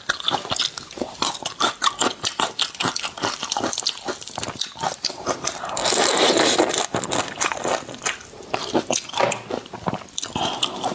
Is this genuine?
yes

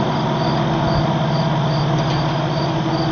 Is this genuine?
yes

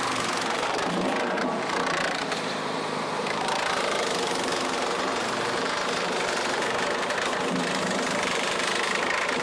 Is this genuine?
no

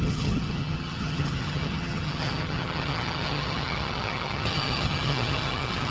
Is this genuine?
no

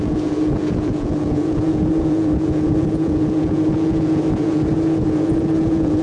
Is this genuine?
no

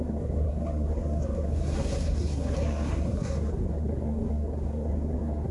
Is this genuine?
no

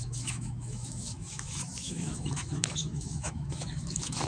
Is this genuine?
no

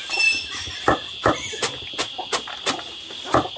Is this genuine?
yes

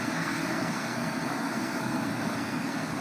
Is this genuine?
no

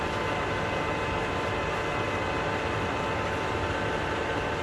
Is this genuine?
yes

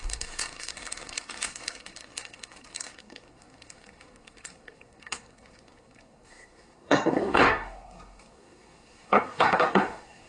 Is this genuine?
no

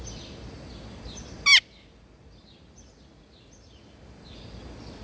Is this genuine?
yes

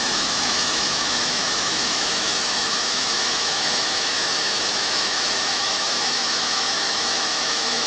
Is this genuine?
no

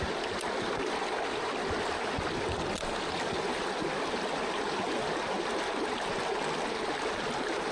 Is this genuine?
yes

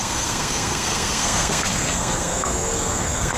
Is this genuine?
no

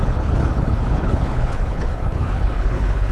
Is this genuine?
no